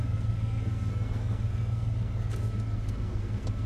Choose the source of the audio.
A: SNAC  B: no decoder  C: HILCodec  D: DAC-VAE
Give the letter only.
A